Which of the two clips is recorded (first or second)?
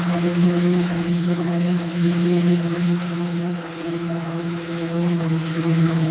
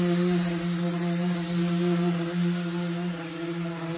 second